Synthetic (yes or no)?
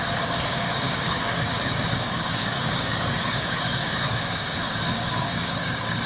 yes